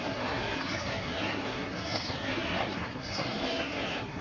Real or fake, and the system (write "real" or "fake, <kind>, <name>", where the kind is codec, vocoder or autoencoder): fake, codec, SNAC